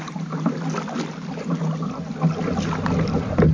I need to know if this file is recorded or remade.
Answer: recorded